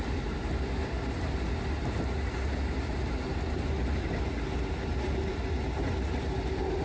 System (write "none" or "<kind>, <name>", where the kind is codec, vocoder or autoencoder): none